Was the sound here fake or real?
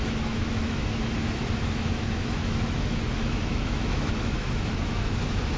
fake